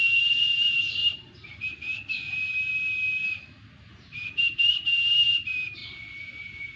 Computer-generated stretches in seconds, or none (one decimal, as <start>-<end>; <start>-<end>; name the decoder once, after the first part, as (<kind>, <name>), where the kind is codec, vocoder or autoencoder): 0.0-1.0 (vocoder, BigVGAN v2); 3.9-5.8; 6.3-6.8